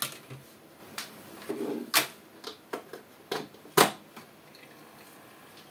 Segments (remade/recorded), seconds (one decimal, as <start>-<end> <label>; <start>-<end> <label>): 0.0-0.8 recorded; 0.8-1.5 remade; 1.5-5.7 recorded